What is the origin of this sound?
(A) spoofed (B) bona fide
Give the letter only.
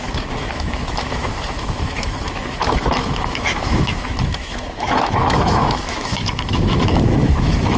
A